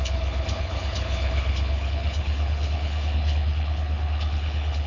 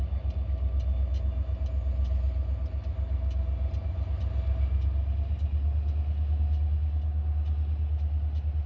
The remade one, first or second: first